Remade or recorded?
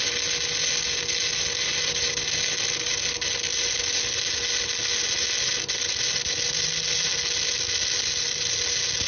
recorded